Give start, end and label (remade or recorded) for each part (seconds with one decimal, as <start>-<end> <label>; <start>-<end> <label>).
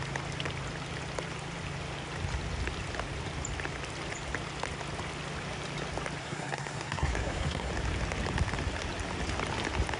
0.0-6.2 recorded; 6.2-7.7 remade; 7.7-10.0 recorded